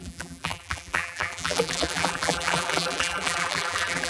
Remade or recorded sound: remade